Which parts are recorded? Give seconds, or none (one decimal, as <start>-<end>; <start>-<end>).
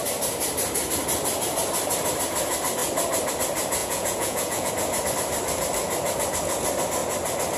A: 0.0-3.8; 4.7-7.6